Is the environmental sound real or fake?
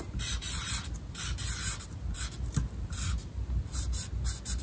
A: real